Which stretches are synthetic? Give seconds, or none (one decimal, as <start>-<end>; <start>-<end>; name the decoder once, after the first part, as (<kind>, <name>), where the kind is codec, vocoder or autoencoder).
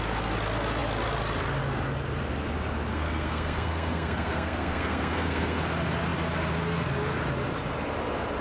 2.9-5.6 (codec, SNAC)